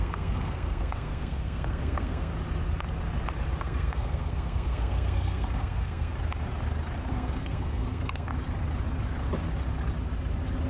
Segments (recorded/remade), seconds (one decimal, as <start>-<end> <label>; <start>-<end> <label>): 0.0-2.3 remade; 2.3-3.6 recorded; 3.6-6.1 remade; 6.1-7.1 recorded; 7.1-8.3 remade; 8.3-10.7 recorded